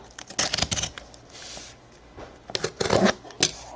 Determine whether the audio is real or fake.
real